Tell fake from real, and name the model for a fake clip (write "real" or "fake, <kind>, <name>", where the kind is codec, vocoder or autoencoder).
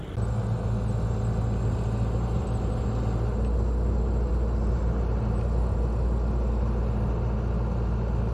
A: real